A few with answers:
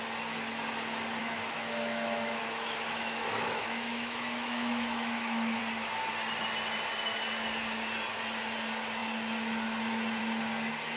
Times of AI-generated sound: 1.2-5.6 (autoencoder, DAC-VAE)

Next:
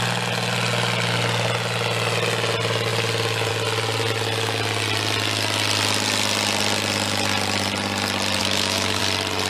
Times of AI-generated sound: 8.4-9.0 (autoencoder, DAC-VAE)